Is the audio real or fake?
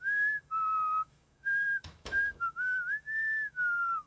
fake